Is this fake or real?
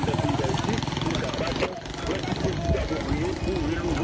real